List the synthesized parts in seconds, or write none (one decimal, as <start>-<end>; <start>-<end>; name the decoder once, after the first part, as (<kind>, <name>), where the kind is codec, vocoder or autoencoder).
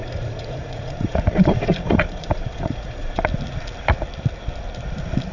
0.0-3.2 (vocoder, Vocos)